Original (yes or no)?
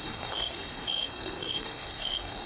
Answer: no